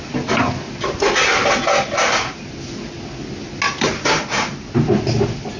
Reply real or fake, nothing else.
real